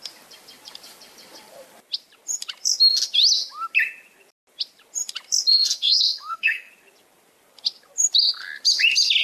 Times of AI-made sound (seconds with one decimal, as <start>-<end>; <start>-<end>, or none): 5.5-6.7